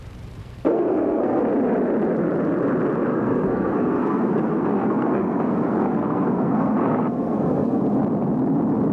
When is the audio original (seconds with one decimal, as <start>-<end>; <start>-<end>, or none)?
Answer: 0.0-0.4; 1.4-3.1; 7.8-8.9